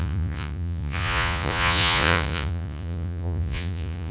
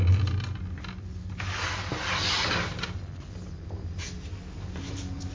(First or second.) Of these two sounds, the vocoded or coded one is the first